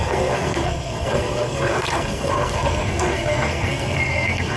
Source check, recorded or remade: remade